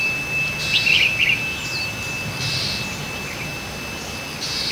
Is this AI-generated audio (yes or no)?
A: no